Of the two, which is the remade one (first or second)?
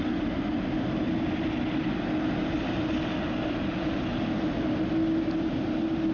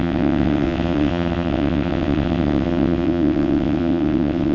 second